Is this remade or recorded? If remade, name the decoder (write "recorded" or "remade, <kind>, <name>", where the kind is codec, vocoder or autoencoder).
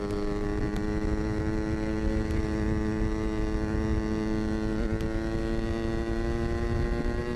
recorded